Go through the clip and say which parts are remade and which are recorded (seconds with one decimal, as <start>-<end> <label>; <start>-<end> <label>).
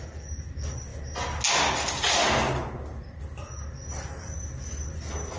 0.0-5.4 recorded